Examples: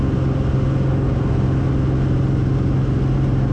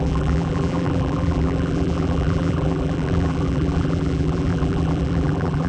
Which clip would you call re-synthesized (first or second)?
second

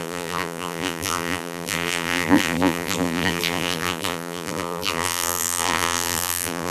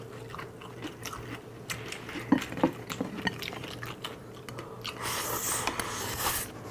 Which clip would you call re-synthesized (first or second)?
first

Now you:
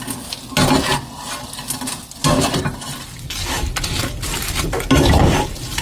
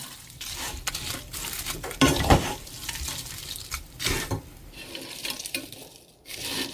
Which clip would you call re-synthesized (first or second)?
second